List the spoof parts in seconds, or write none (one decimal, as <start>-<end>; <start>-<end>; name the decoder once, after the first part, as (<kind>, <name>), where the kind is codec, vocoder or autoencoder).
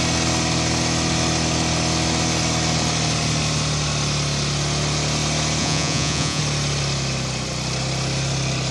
5.6-6.4 (vocoder, Vocos)